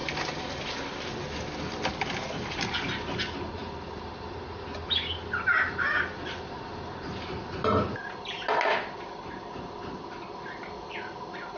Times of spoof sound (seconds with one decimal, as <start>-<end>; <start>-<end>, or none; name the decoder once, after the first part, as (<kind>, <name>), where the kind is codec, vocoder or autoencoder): none